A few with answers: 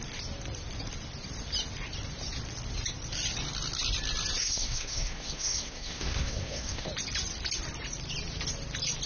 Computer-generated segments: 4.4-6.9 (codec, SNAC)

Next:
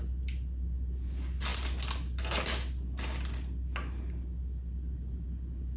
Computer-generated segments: none

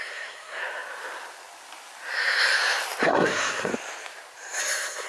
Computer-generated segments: 0.0-0.6 (codec, SNAC); 3.0-3.7; 4.6-5.1

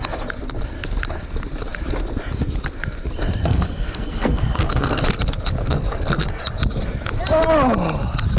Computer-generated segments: 3.4-5.0 (codec, SNAC); 5.6-6.4

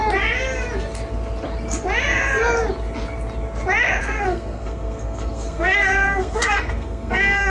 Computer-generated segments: 4.0-7.5 (codec, SNAC)

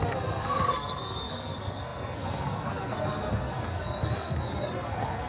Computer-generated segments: 0.0-5.3 (codec, SNAC)

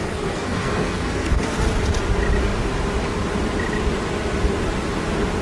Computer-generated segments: 0.0-1.6 (codec, SNAC)

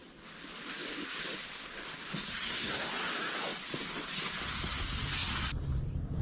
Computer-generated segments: 2.3-2.9 (codec, SNAC)